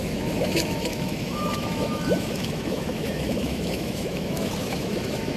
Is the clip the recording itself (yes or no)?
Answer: no